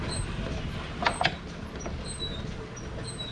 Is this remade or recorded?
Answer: recorded